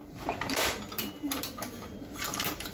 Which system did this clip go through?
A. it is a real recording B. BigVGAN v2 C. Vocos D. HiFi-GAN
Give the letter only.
B